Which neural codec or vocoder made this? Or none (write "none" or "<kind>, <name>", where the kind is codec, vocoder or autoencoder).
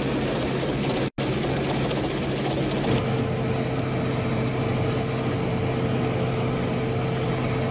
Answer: none